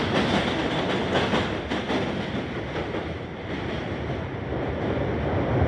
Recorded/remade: recorded